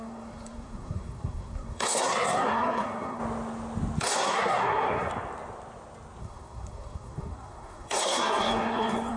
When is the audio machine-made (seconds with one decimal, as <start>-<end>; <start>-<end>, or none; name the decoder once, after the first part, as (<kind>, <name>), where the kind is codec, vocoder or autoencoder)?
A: 0.0-3.2 (codec, SNAC); 4.0-5.1; 6.2-9.2

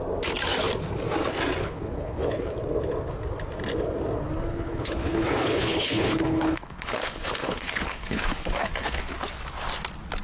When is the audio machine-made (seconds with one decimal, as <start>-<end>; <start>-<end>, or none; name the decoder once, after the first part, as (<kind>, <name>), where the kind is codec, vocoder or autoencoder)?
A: 1.6-2.5 (codec, HILCodec); 4.5-9.0

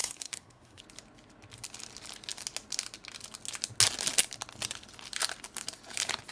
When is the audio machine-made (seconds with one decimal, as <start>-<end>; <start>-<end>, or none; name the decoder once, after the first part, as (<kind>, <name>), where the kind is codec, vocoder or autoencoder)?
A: 0.0-0.8 (codec, SNAC)

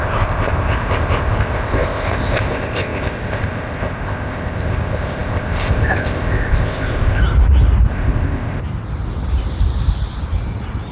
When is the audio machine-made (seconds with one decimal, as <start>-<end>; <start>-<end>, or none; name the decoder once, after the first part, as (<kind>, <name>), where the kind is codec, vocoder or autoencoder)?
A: 0.0-7.2 (codec, ZipCodec); 7.9-8.6

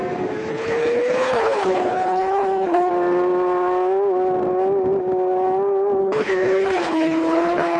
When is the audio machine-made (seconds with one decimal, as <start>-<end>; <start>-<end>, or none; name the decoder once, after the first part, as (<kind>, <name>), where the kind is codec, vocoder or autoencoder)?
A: 0.5-2.9 (codec, HILCodec); 6.0-7.8

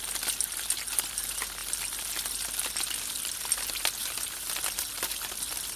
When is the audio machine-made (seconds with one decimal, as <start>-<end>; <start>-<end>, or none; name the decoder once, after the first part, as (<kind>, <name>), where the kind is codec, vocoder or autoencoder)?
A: none